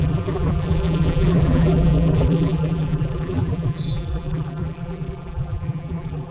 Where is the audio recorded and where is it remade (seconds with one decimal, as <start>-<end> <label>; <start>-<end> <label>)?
0.0-6.3 remade